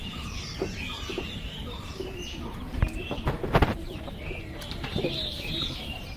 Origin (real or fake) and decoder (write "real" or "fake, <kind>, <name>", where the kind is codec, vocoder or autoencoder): fake, vocoder, BigVGAN v2